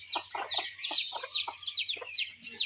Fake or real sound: real